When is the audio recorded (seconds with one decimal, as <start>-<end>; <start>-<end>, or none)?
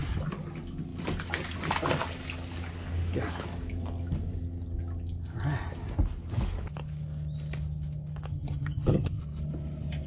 0.0-8.3; 9.2-10.1